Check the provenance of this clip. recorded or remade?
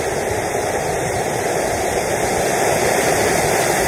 remade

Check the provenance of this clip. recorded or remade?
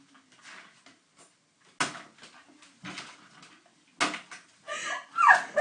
recorded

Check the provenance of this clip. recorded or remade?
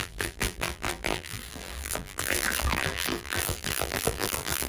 remade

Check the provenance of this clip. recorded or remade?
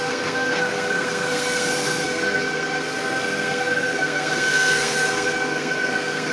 remade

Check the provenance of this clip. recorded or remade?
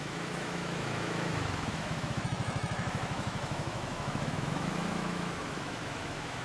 remade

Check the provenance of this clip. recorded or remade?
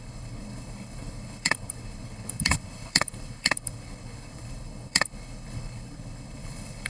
remade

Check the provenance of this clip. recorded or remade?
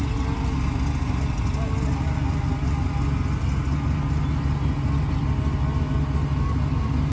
recorded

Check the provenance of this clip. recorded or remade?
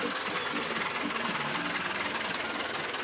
recorded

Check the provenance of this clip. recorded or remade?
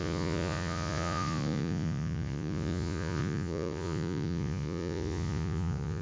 remade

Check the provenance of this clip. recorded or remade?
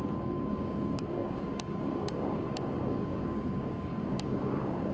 remade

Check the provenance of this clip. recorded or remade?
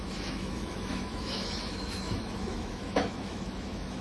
remade